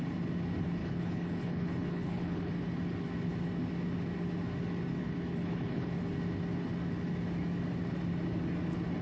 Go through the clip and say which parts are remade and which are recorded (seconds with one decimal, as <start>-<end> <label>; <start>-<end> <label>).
0.0-0.8 recorded; 0.8-2.5 remade; 2.5-5.0 recorded; 5.0-5.9 remade; 5.9-9.0 recorded